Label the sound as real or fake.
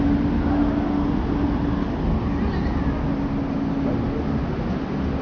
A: real